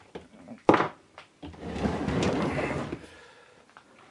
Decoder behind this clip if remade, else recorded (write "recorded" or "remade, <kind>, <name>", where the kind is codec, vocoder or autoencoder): remade, vocoder, BigVGAN v2